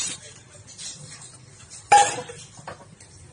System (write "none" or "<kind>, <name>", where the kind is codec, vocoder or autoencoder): vocoder, BigVGAN v2